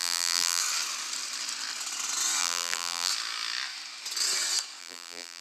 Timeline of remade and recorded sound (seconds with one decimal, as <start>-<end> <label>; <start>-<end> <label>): 0.0-0.6 remade; 0.6-2.4 recorded; 2.4-3.1 remade; 3.1-4.8 recorded; 4.8-5.4 remade